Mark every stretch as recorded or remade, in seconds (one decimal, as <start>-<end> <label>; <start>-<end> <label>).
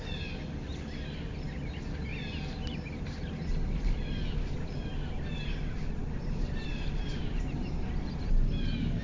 0.0-9.0 recorded